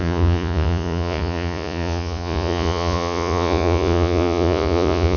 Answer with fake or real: fake